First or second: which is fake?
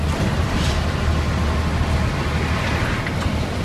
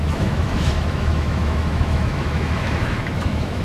second